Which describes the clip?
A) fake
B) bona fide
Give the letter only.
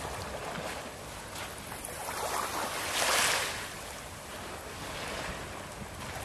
B